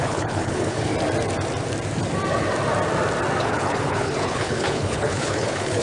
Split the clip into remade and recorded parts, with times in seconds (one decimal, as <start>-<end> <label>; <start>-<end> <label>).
0.0-0.9 remade; 0.9-3.4 recorded; 3.4-5.8 remade